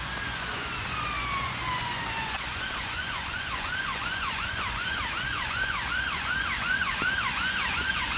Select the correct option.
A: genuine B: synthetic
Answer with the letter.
B